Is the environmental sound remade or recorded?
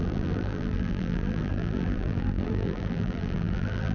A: remade